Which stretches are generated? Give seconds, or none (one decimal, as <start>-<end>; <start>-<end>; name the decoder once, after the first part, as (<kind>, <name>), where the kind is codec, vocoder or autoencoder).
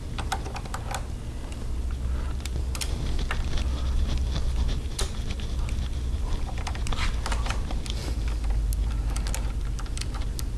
none